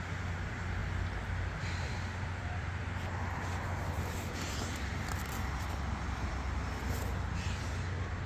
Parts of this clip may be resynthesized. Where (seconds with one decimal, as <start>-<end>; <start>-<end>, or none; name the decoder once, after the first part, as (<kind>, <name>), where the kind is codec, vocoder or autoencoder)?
none